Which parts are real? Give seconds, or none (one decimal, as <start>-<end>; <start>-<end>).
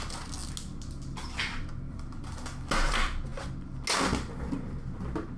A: 0.0-5.4